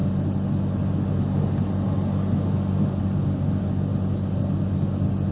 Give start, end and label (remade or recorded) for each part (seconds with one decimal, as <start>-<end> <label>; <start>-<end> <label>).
0.0-5.3 recorded